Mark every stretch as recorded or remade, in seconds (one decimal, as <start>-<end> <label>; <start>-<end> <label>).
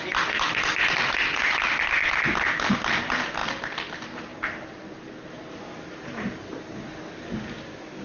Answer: 0.0-8.0 recorded